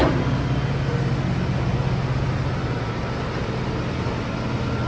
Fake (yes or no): no